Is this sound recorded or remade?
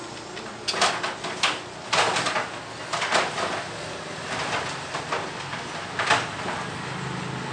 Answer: recorded